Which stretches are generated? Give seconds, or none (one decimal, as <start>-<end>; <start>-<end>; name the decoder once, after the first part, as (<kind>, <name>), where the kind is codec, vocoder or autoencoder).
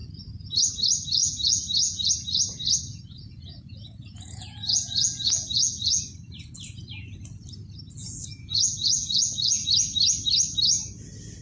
1.2-2.1 (vocoder, Vocos); 2.9-6.0; 8.0-9.7